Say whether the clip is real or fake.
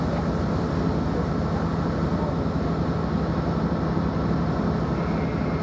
real